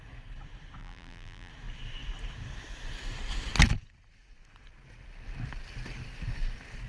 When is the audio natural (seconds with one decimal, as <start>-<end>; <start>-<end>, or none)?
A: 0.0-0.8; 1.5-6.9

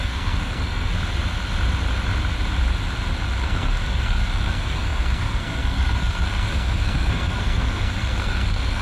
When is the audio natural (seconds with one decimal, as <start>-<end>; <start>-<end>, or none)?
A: 0.9-3.4

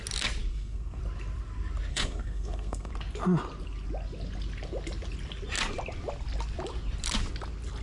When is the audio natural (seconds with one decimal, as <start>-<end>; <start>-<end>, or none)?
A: 0.0-0.5; 1.0-1.9; 2.9-7.8